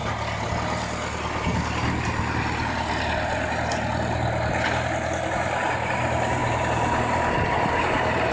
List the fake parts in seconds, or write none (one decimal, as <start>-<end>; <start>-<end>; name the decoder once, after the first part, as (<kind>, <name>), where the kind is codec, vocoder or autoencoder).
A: 6.4-8.3 (vocoder, BigVGAN v2)